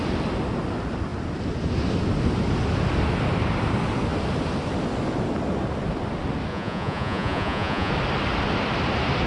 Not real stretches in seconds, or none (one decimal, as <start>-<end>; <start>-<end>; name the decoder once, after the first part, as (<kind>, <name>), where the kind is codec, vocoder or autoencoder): 6.5-7.9 (vocoder, Vocos)